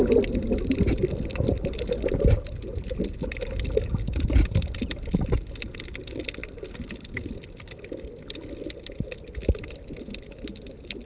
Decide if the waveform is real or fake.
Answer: real